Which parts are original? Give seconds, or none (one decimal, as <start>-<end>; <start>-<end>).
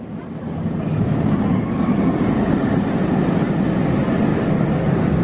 0.0-4.3